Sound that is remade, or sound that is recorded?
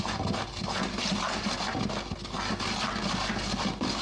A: recorded